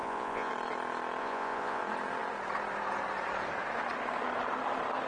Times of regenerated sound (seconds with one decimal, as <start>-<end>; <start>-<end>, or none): 0.0-0.5; 1.2-1.8